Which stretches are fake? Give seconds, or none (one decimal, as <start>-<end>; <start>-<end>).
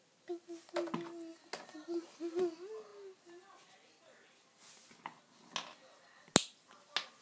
none